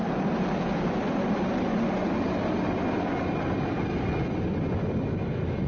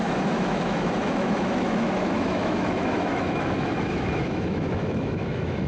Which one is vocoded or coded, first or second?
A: second